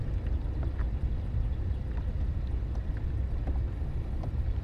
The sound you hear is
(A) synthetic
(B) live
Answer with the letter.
B